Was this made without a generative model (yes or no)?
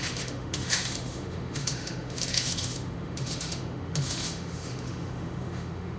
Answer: no